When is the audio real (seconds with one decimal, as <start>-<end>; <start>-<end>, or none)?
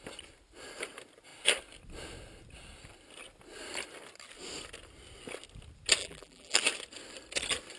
0.0-6.0; 6.6-7.8